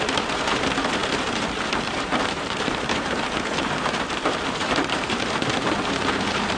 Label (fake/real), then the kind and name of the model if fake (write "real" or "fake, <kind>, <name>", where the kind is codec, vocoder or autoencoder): fake, vocoder, BigVGAN v2